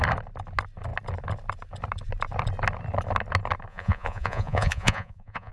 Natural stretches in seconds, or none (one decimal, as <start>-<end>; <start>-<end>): 0.0-3.7